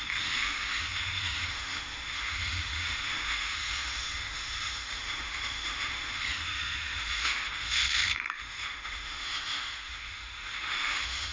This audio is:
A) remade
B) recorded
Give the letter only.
A